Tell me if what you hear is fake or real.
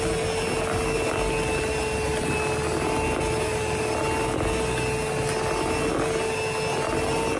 real